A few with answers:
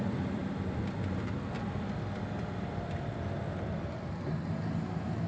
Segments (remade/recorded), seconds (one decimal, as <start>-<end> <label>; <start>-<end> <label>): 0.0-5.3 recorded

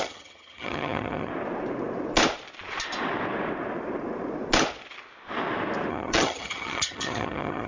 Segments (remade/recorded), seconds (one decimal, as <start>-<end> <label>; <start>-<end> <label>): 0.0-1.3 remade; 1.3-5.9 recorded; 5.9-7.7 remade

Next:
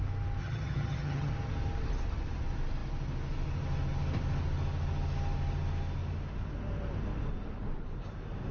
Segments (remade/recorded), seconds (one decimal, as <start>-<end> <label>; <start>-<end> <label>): 0.0-0.4 recorded; 0.4-1.3 remade; 1.3-8.5 recorded

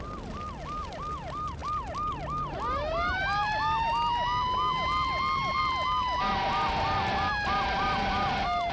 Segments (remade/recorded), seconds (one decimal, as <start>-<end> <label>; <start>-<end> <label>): 0.0-8.7 recorded

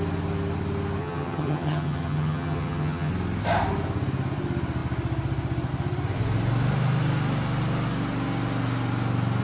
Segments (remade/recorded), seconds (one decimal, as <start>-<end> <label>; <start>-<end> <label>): 0.0-1.0 recorded; 1.0-3.1 remade; 3.1-9.4 recorded